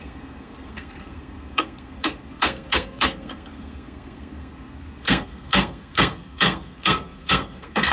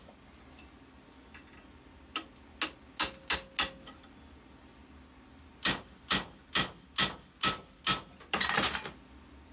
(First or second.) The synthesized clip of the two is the first